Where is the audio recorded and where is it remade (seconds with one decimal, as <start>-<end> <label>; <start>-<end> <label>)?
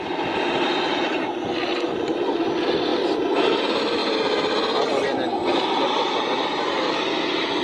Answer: 0.0-7.6 recorded